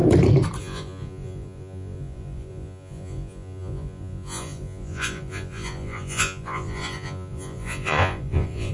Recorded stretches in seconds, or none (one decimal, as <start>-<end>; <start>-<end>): 0.0-0.6